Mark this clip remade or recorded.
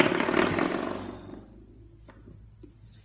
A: recorded